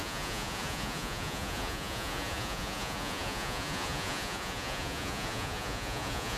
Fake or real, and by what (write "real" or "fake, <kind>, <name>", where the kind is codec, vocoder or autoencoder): fake, vocoder, Vocos